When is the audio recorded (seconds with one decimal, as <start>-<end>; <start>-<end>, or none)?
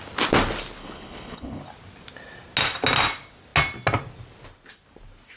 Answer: 0.0-0.8; 1.6-5.4